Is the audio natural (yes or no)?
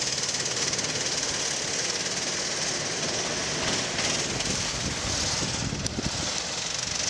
yes